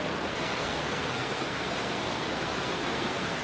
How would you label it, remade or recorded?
remade